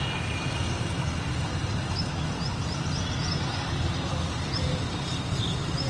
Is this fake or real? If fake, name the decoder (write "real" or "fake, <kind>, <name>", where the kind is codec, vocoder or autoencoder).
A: real